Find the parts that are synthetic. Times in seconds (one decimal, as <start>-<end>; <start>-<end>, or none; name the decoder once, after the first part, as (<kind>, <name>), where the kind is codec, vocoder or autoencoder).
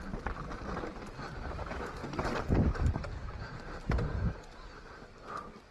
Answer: 2.0-3.5 (vocoder, BigVGAN v2)